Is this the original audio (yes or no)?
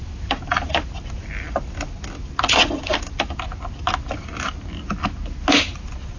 yes